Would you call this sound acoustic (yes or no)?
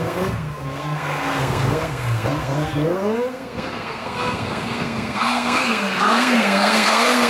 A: no